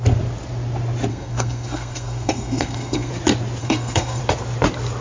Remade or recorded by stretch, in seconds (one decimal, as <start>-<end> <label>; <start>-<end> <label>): 0.0-1.1 recorded; 1.1-3.1 remade; 3.1-3.6 recorded; 3.6-4.2 remade; 4.2-5.0 recorded